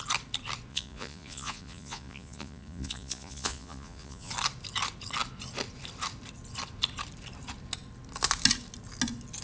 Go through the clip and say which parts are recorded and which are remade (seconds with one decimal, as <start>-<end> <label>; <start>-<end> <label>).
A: 0.0-0.7 recorded; 0.7-4.3 remade; 4.3-9.4 recorded